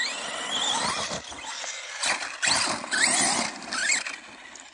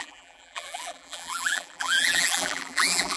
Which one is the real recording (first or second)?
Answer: first